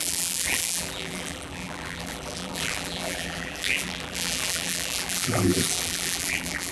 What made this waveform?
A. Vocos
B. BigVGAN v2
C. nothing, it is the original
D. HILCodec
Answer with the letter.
B